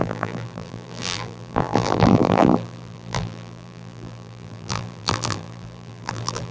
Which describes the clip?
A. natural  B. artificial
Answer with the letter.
B